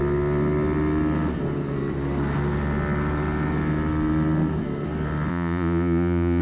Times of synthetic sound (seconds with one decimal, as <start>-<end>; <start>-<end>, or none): 5.3-6.4